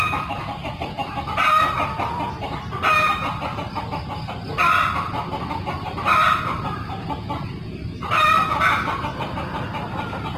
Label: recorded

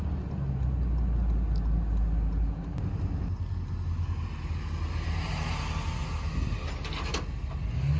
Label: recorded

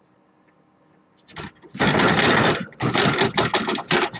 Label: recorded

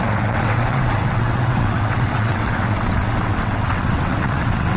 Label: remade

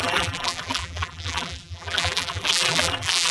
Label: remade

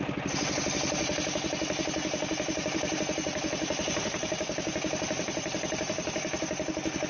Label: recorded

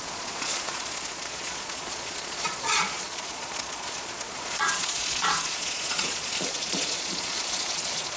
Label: remade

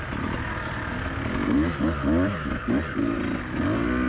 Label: recorded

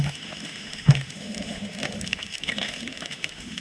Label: remade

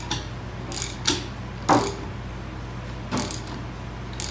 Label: recorded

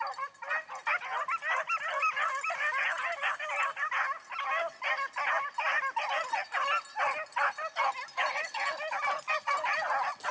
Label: recorded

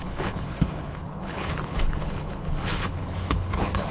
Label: remade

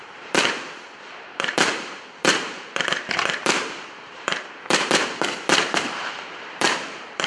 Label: remade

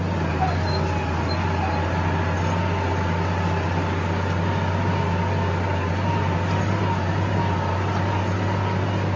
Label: recorded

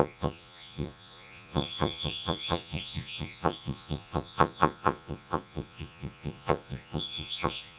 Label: remade